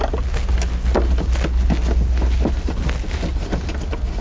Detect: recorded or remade recorded